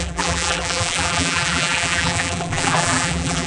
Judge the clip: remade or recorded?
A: remade